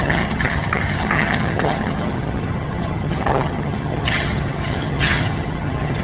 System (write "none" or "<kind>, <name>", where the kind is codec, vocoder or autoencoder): vocoder, HiFi-GAN